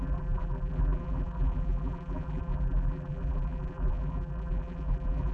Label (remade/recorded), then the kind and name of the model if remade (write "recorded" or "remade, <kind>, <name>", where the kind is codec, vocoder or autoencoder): remade, vocoder, BigVGAN v2